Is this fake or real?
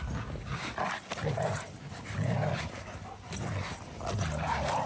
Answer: real